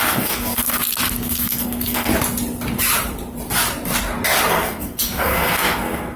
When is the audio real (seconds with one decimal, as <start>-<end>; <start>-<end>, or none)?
2.1-4.5

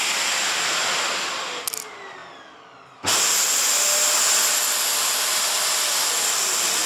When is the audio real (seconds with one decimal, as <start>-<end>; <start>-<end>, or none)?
0.0-6.9

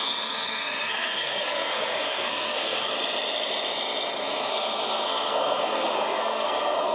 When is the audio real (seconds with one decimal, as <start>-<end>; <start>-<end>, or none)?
2.9-4.2

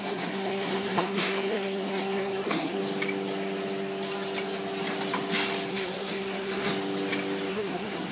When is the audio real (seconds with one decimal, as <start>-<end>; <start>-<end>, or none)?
2.8-5.7; 6.7-7.5

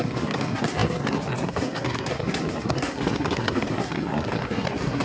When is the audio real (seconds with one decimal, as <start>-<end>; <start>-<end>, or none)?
none

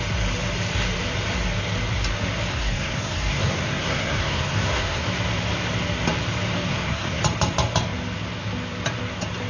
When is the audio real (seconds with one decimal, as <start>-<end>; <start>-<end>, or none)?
0.0-2.5; 5.0-6.7; 7.2-9.5

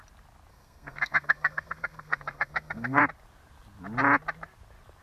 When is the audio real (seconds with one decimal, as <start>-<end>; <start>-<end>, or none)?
0.0-0.5; 3.0-5.0

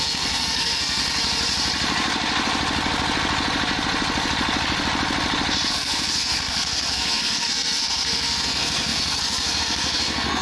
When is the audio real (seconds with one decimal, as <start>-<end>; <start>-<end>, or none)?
1.0-5.7